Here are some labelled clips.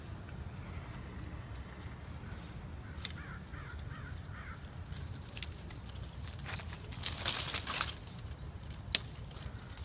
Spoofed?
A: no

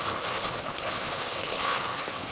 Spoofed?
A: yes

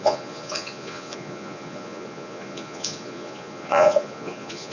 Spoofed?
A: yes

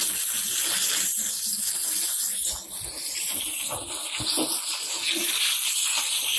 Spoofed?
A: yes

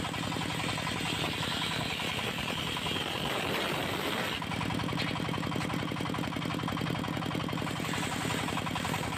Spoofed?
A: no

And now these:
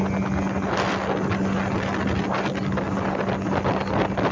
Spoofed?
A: no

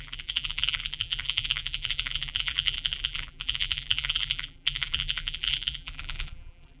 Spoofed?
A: yes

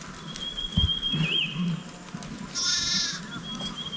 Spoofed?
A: no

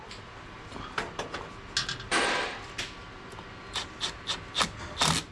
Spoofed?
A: no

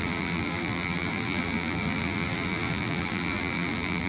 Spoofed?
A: yes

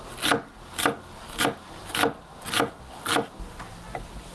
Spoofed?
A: no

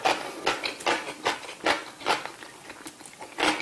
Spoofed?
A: no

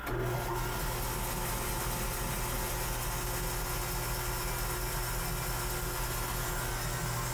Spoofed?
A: no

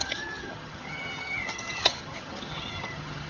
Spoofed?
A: yes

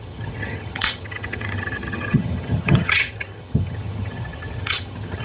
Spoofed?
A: yes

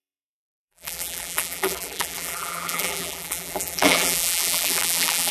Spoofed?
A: yes